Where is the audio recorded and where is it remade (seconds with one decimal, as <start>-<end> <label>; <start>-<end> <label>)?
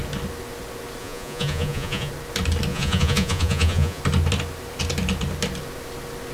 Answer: 0.0-1.0 recorded; 1.0-2.1 remade; 2.1-2.7 recorded; 2.7-4.0 remade; 4.0-6.3 recorded